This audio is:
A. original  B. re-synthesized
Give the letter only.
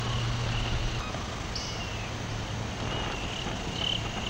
A